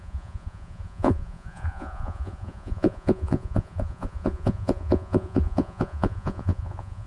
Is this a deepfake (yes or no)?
yes